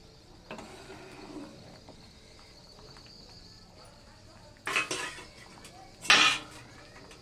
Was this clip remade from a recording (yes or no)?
no